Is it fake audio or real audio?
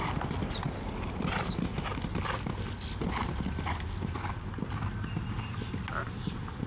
real